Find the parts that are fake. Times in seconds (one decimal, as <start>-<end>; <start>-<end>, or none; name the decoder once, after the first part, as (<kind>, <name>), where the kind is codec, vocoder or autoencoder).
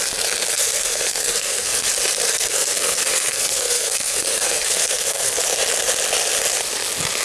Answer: 0.5-1.9 (codec, SNAC); 2.3-5.4